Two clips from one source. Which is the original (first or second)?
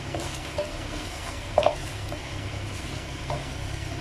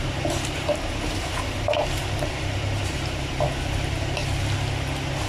second